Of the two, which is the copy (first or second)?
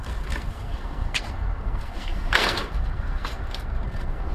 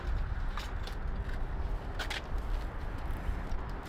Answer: first